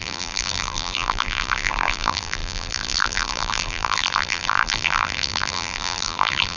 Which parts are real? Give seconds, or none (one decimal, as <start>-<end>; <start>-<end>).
none